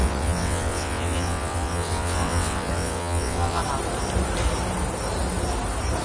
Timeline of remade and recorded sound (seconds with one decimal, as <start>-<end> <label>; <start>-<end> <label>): 0.0-3.6 remade; 3.6-6.0 recorded